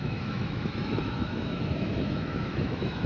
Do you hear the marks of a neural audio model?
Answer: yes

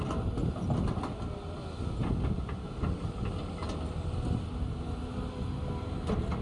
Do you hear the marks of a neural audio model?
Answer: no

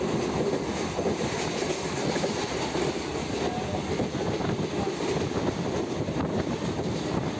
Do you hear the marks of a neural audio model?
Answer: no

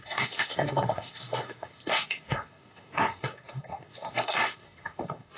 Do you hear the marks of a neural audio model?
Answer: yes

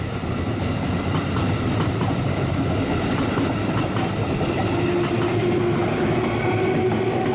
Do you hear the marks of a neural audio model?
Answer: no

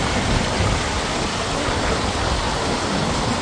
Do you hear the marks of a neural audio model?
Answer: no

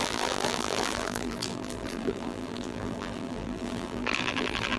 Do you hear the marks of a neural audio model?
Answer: yes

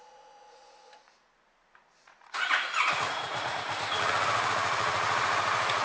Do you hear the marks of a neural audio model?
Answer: yes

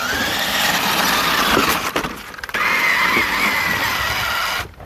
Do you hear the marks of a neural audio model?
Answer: no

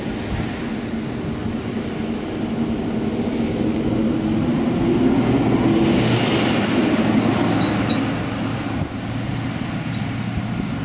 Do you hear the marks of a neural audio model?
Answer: no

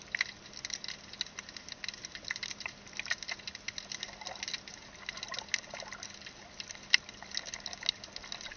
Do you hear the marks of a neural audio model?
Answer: no